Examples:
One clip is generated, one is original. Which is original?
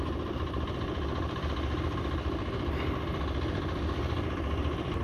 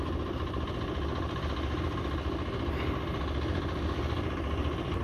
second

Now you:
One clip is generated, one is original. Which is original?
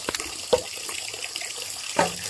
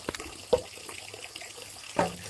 second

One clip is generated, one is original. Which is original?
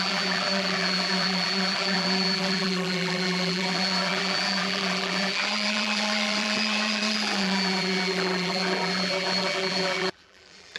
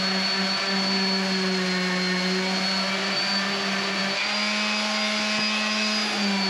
second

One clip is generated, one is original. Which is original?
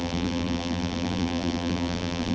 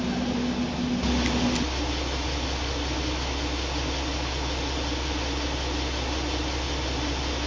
second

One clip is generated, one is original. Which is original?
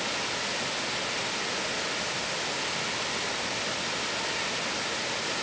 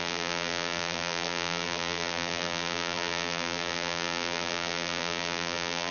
first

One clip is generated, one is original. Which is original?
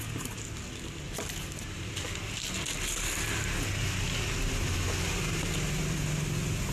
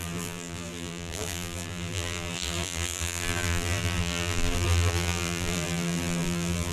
first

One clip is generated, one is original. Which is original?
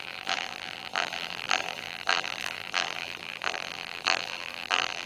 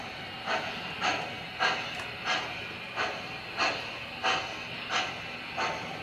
second